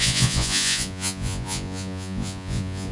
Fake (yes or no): yes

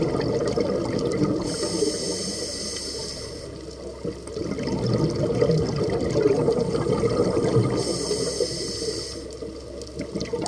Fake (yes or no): no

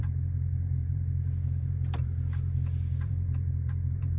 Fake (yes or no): yes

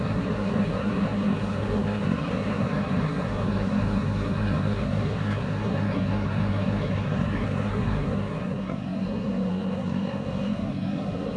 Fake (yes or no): yes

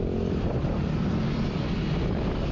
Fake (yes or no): no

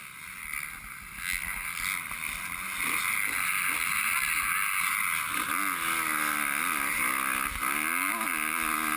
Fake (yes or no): no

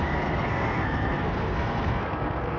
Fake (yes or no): yes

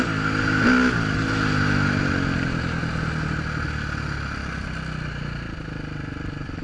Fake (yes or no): no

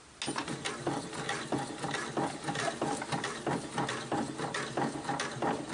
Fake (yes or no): no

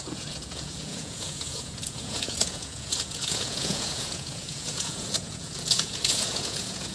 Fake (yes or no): yes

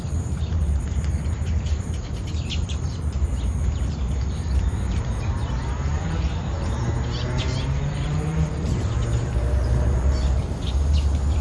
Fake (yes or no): yes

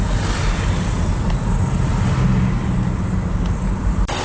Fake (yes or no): no